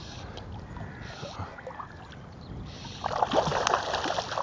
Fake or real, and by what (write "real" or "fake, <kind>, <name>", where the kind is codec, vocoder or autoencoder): real